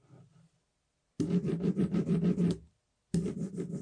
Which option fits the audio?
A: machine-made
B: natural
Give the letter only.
B